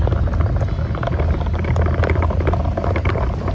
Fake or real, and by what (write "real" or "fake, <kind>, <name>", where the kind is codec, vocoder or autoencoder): real